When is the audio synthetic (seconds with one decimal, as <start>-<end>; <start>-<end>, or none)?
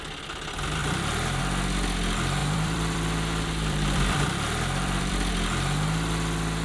0.8-1.4; 2.4-5.3